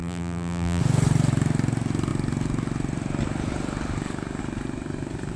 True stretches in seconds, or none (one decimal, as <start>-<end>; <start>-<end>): 0.8-5.4